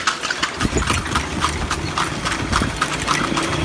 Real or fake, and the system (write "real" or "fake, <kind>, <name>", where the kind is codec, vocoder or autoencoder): real